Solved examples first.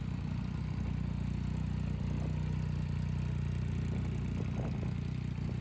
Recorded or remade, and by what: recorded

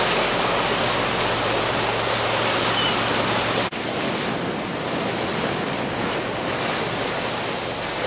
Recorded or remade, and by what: recorded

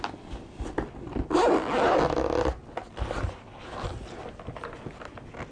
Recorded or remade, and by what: recorded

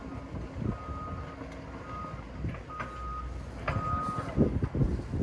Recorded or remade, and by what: recorded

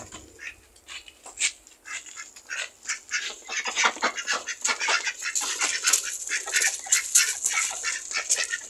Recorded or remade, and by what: recorded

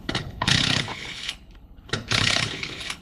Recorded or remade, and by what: remade, codec, HILCodec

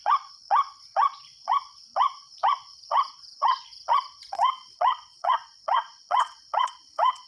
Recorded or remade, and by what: remade, vocoder, Vocos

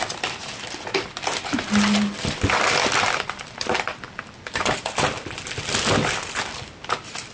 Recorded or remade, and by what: remade, vocoder, BigVGAN v2